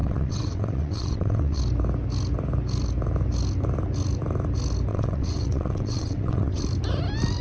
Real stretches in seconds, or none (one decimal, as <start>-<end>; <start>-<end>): 1.6-4.9; 6.6-7.4